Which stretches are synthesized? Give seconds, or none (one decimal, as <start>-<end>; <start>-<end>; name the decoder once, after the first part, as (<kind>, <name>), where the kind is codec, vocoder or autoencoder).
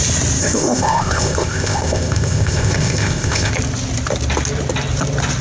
0.4-3.5 (codec, ZipCodec)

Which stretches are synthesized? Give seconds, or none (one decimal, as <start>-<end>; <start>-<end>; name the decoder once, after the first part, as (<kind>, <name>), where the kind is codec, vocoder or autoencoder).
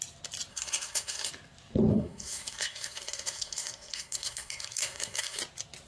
0.5-1.3 (codec, SNAC); 1.9-5.4